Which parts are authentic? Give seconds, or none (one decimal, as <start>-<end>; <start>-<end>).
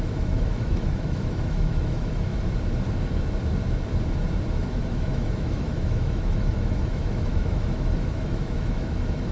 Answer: 2.3-4.5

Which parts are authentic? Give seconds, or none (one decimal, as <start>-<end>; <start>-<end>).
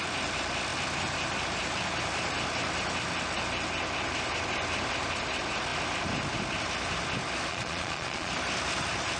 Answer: 0.0-7.5; 8.3-9.2